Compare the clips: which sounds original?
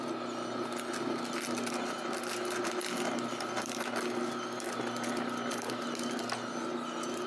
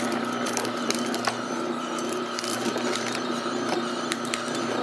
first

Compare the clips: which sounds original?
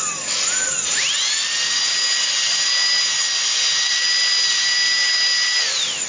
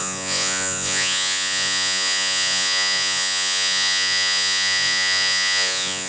first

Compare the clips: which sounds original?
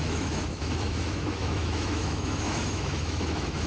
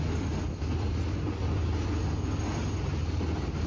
second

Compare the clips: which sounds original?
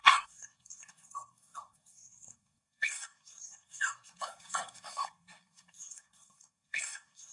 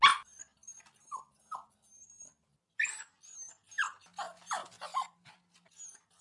second